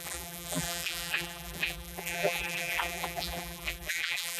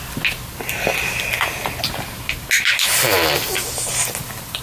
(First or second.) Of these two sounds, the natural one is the second